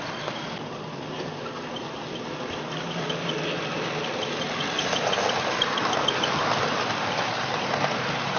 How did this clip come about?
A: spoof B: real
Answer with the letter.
B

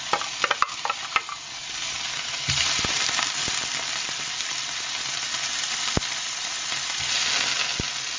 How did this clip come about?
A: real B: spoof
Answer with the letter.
A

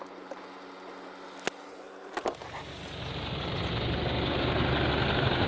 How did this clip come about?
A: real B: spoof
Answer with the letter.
A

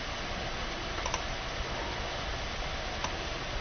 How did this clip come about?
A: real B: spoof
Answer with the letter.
A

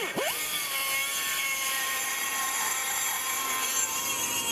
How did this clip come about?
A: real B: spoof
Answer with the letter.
B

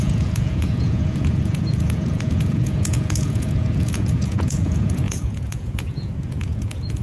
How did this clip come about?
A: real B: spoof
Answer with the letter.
B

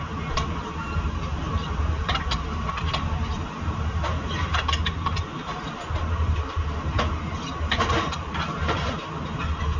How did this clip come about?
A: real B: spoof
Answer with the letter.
B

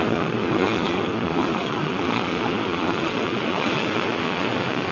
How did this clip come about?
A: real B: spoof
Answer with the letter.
B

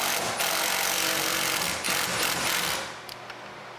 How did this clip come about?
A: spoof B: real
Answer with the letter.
B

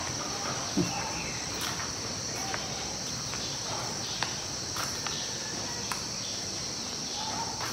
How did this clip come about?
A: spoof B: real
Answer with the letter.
A